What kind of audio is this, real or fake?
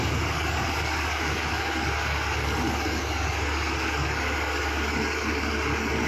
fake